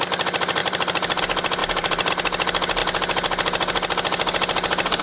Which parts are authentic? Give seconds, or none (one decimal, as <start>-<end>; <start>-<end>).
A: 0.0-0.6; 1.2-1.6; 2.1-5.0